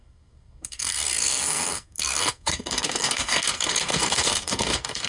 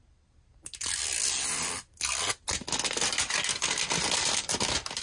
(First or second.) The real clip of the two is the second